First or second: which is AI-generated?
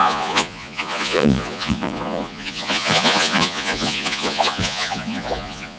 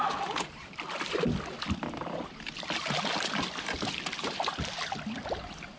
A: first